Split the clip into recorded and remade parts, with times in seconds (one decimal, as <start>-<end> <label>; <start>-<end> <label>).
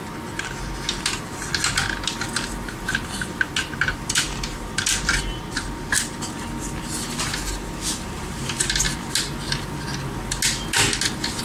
0.0-11.4 recorded